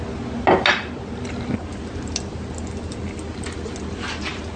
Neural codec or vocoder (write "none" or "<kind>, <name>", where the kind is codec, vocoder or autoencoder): none